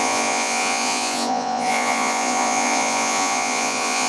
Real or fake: fake